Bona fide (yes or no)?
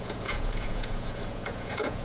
no